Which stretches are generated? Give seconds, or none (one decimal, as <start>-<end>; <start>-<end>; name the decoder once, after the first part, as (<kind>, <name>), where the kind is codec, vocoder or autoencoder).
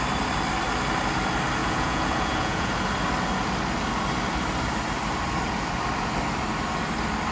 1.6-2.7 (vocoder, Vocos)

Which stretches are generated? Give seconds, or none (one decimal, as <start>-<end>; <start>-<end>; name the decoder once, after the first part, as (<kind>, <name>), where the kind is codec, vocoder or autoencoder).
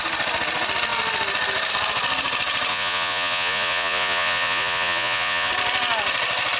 2.7-5.5 (vocoder, Vocos)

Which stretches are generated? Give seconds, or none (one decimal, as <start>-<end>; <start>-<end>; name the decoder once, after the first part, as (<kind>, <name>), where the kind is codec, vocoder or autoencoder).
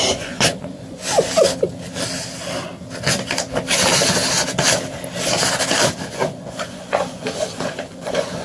0.0-1.1 (vocoder, Vocos); 6.1-8.4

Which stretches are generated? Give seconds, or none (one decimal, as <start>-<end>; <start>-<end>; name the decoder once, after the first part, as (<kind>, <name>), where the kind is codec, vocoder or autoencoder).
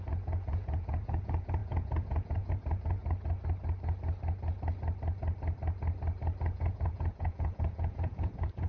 0.0-3.0 (vocoder, Vocos); 6.4-8.7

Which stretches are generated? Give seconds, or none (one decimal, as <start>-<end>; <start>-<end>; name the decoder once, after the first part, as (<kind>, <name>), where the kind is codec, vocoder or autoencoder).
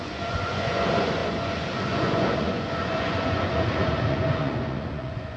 0.0-5.4 (vocoder, Vocos)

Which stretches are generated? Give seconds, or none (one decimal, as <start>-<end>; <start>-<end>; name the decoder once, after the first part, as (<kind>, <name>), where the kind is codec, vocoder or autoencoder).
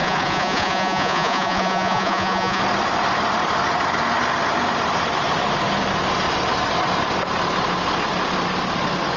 0.0-2.6 (vocoder, Vocos)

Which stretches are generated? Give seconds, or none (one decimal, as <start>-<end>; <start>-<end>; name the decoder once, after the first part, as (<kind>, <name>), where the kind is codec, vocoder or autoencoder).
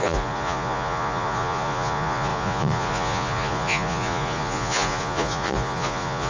0.0-6.3 (vocoder, Vocos)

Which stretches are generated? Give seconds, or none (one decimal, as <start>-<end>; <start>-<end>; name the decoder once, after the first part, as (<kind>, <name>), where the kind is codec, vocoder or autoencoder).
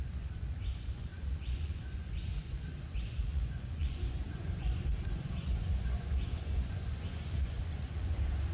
0.0-8.5 (vocoder, Vocos)